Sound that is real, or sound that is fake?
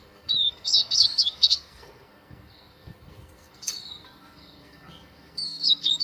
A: fake